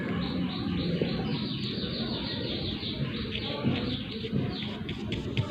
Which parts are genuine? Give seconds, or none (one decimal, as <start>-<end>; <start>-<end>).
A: 0.0-5.5